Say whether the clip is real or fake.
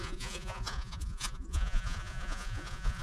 fake